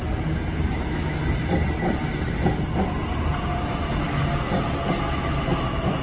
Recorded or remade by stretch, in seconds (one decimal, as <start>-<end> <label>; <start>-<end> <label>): 0.0-0.5 recorded; 0.5-1.2 remade; 1.2-3.7 recorded; 3.7-4.2 remade; 4.2-5.0 recorded; 5.0-6.0 remade